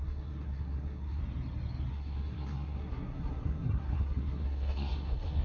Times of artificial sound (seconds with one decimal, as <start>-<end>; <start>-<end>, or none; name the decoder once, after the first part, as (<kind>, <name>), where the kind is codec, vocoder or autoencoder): 0.0-1.2 (codec, SNAC); 1.9-5.4